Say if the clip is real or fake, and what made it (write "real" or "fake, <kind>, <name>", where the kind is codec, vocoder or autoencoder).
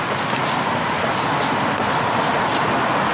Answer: real